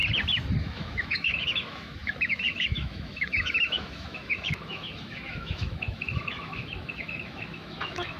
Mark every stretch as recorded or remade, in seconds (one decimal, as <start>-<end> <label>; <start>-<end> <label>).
0.0-0.6 recorded; 0.6-8.2 remade